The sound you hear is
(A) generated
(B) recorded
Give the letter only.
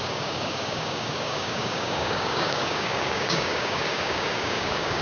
A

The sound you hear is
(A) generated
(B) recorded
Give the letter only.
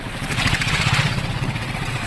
A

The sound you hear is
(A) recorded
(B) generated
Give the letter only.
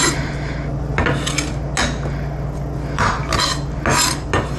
A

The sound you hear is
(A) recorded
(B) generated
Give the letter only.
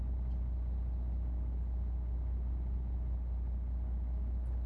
A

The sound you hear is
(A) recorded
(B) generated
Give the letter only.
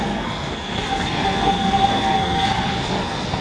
B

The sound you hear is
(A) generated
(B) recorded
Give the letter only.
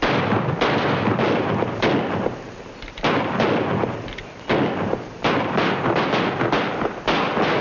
B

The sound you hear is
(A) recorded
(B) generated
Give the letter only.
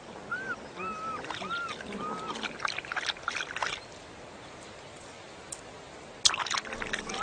A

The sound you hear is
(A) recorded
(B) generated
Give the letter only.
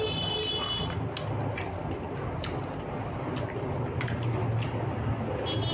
A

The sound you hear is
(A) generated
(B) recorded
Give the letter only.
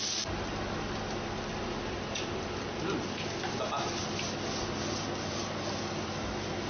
B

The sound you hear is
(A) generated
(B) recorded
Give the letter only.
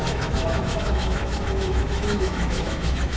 A